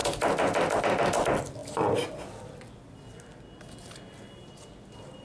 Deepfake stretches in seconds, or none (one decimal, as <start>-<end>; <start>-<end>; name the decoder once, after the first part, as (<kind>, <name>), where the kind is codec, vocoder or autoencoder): none